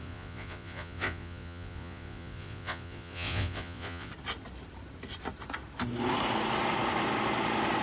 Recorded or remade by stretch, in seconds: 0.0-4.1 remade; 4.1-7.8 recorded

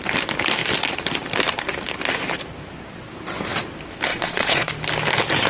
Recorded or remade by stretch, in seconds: 0.0-4.1 recorded; 4.1-4.7 remade; 4.7-5.5 recorded

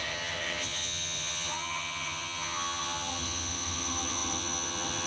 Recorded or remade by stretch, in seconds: 0.0-5.1 remade

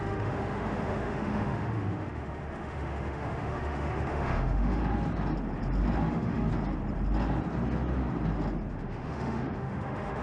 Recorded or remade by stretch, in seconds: 0.0-4.8 remade; 4.8-6.1 recorded; 6.1-6.5 remade; 6.5-8.7 recorded; 8.7-10.2 remade